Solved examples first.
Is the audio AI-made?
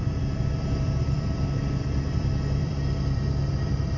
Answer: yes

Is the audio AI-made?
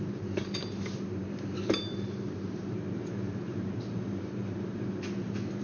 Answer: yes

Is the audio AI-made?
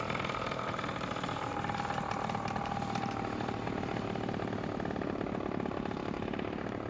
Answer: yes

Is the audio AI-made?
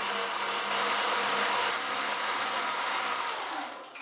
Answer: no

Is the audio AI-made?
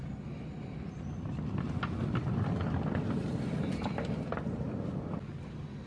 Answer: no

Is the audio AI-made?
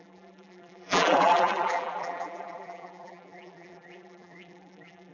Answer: yes